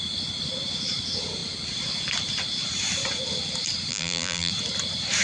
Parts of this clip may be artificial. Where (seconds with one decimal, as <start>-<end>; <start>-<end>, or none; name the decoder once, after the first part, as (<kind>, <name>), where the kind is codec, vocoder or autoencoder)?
3.9-4.5 (vocoder, BigVGAN v2)